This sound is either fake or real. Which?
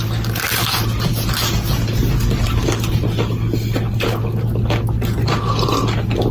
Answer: real